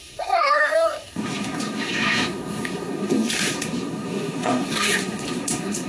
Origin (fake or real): fake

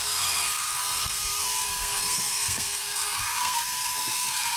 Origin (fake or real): fake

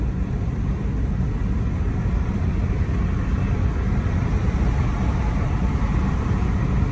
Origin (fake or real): real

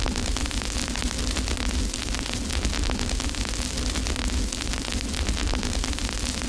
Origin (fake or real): real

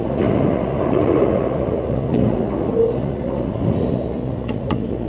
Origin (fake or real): fake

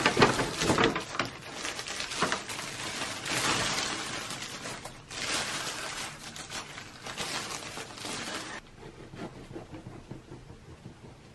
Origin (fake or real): real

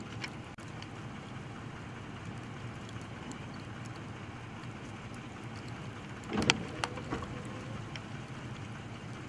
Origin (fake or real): real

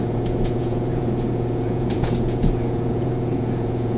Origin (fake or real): fake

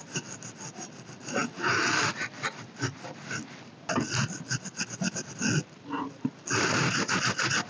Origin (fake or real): real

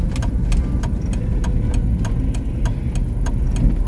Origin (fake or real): real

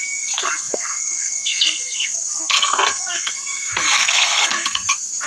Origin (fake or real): fake